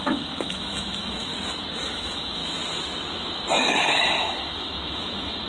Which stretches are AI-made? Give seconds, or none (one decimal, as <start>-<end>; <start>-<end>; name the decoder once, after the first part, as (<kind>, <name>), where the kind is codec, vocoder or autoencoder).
0.0-1.3 (autoencoder, DAC-VAE); 1.8-2.4; 3.7-5.5